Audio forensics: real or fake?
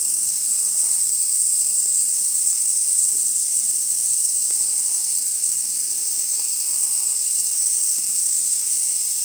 fake